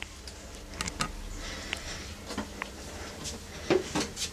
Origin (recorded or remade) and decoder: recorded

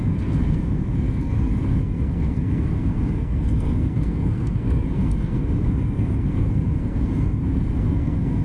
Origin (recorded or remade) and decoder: remade, codec, SNAC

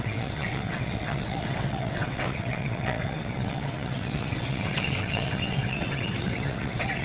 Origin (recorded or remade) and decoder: remade, vocoder, WaveNeXt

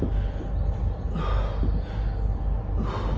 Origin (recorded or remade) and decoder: recorded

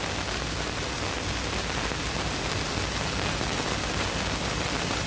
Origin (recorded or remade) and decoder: recorded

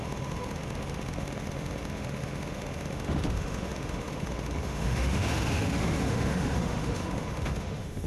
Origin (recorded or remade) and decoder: remade, autoencoder, DAC-VAE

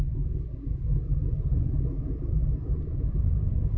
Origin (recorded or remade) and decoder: recorded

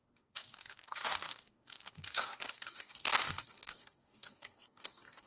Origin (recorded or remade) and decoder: remade, codec, DAC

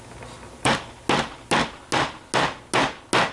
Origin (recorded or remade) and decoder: recorded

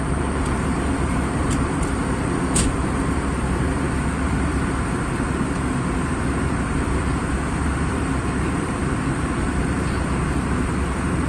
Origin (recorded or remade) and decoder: remade, vocoder, BigVGAN v2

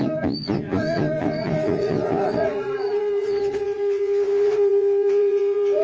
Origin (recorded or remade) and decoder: remade, vocoder, Vocos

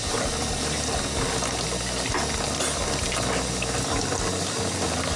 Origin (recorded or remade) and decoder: recorded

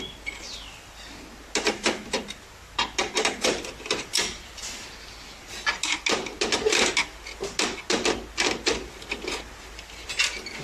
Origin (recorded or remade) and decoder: recorded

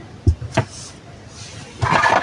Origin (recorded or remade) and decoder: recorded